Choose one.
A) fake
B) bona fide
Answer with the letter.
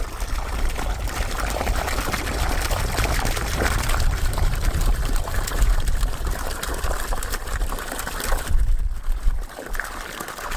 A